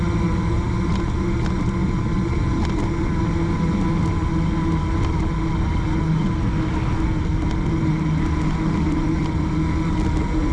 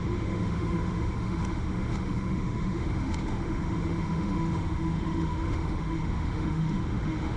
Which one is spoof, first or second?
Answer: second